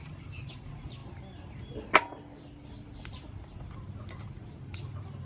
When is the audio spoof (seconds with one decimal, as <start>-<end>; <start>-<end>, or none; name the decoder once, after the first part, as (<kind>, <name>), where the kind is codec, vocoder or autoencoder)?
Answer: none